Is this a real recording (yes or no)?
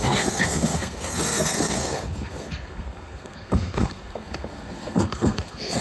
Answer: no